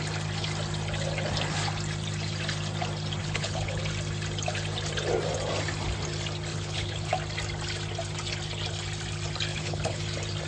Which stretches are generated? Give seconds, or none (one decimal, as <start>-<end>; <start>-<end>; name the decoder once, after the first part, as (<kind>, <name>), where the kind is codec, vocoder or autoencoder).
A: 3.2-3.8 (codec, HILCodec); 6.5-7.1; 9.5-10.0